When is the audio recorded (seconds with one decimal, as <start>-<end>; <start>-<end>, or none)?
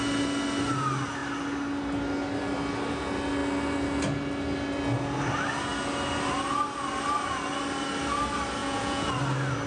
0.0-8.6; 9.1-9.7